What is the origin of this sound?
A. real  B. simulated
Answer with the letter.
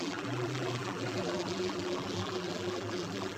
B